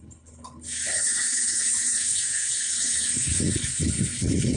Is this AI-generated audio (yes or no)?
yes